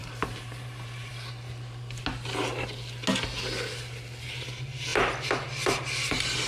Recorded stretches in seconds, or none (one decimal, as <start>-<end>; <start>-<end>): 1.1-6.5